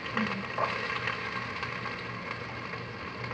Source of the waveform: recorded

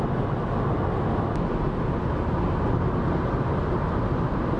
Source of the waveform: recorded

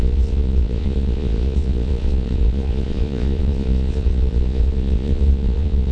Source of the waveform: remade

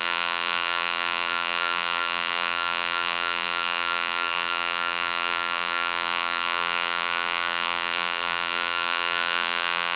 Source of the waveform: remade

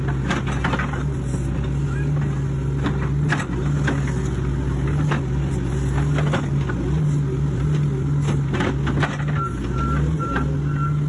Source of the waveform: recorded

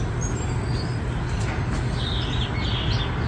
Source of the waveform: recorded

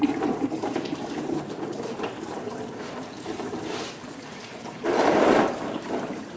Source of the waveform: remade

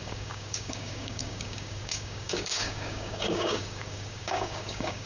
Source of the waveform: remade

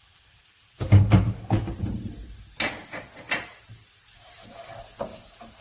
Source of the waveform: recorded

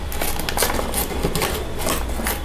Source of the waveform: recorded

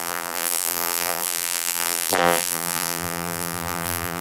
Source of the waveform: remade